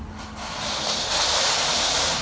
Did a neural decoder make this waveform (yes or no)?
no